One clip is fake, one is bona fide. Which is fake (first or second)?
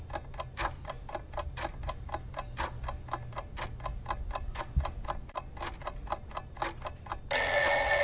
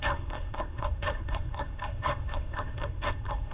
second